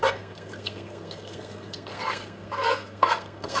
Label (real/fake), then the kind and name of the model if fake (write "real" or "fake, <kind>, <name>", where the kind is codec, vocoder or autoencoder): fake, codec, SNAC